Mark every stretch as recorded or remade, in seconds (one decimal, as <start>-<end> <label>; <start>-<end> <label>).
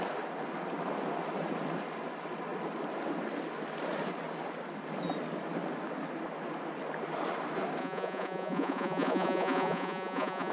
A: 0.0-7.8 recorded; 7.8-10.5 remade